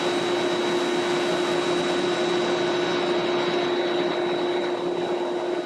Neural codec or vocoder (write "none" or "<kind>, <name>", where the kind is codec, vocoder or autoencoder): none